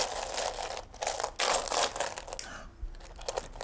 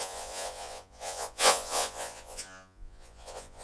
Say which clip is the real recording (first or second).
first